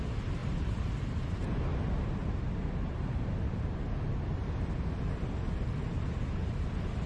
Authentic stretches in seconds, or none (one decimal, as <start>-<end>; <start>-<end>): 0.0-0.4; 0.9-2.2; 3.3-7.1